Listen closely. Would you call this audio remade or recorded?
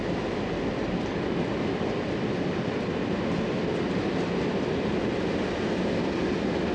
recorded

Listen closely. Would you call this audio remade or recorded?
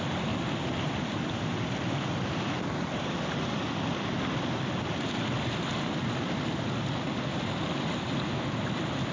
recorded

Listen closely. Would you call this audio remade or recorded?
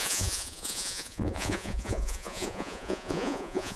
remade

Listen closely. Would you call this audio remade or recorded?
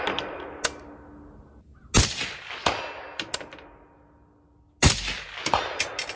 recorded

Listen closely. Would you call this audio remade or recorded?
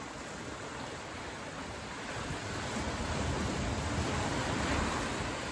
recorded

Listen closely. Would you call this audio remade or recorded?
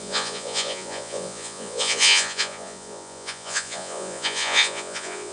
remade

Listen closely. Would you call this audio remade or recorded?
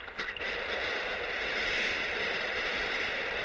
recorded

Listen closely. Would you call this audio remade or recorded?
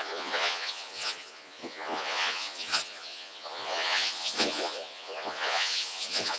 remade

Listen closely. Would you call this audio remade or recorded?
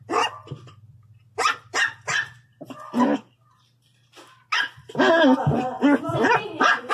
recorded